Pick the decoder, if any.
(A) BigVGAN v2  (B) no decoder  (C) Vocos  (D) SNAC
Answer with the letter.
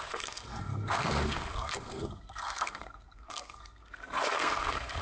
D